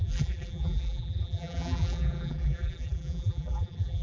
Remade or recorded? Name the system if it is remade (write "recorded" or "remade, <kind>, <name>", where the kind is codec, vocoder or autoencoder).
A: remade, vocoder, BigVGAN v2